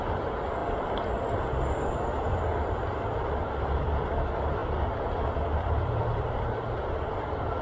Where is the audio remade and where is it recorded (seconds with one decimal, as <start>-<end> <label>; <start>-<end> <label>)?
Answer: 0.0-0.6 remade; 0.6-2.7 recorded; 2.7-7.6 remade